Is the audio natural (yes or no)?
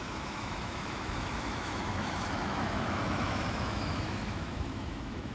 no